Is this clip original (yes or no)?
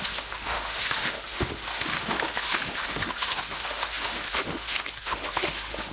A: no